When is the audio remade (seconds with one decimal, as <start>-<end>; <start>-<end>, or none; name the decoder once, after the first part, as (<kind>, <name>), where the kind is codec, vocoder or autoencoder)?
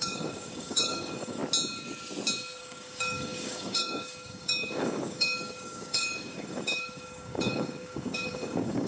0.0-1.4 (codec, DAC); 2.6-8.9